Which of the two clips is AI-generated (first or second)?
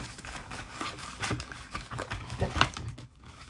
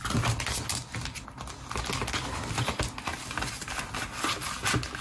first